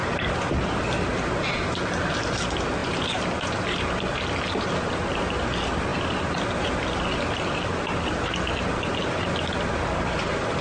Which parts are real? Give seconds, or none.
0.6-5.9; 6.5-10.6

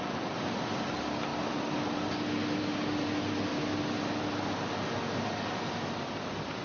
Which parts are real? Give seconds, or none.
0.0-6.6

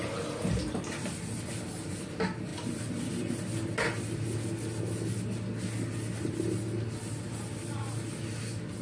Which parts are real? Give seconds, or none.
0.0-8.8

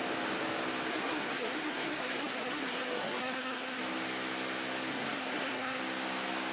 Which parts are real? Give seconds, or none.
0.0-0.9; 3.8-4.9; 5.8-6.5

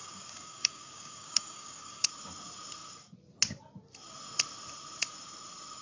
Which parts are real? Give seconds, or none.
2.1-5.8

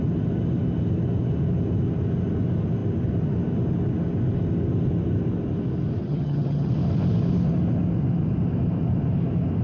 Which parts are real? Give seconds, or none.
0.0-6.0; 6.7-9.6

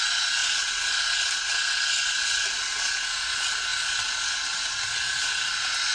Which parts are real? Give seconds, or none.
0.0-5.9